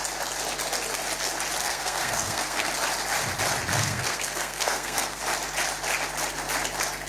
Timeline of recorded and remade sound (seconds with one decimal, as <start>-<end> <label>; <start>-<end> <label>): 0.0-1.6 recorded; 1.6-2.7 remade; 2.7-3.7 recorded; 3.7-5.2 remade; 5.2-7.1 recorded